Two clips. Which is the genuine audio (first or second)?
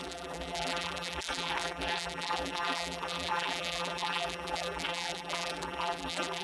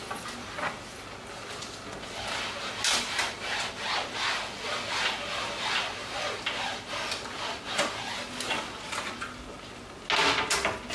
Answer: second